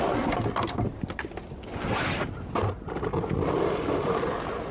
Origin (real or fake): real